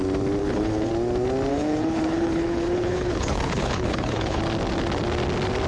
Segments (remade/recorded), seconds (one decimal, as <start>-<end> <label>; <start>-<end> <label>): 0.0-0.4 recorded; 0.4-0.9 remade; 0.9-1.5 recorded; 1.5-4.4 remade; 4.4-5.7 recorded